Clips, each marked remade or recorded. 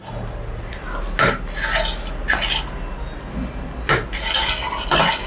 recorded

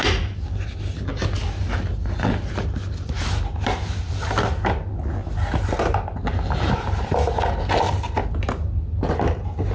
recorded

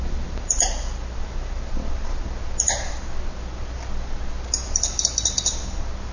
recorded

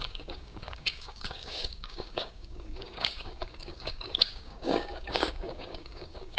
remade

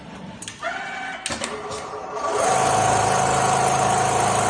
recorded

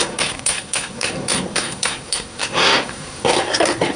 remade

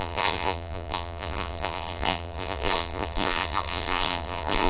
remade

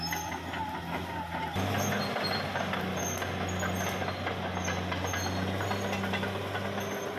recorded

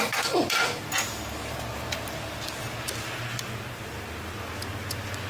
recorded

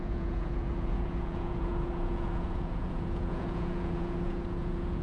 remade